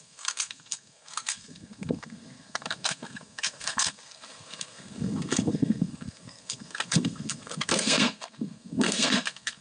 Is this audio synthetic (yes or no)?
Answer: yes